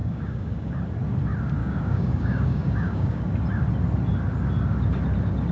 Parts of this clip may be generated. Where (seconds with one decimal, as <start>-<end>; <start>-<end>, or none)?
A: 0.0-0.8; 1.6-3.2